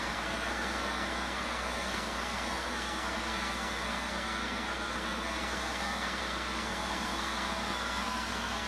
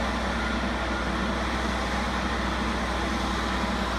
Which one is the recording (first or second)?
second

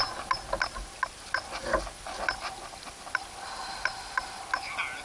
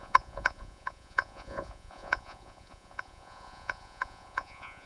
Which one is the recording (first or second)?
first